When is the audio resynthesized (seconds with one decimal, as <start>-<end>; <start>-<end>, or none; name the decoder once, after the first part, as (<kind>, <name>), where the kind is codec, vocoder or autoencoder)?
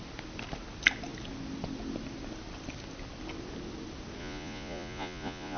4.2-5.6 (vocoder, Vocos)